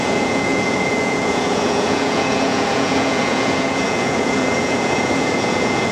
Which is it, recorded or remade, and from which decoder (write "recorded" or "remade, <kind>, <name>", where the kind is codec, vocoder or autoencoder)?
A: remade, vocoder, Vocos